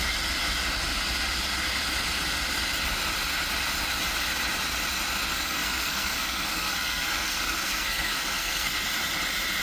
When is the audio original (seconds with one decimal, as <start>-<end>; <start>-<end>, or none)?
0.0-5.3; 8.7-9.6